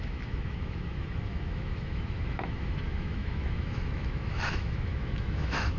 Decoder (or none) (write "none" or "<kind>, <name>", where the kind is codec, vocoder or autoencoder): autoencoder, DAC-VAE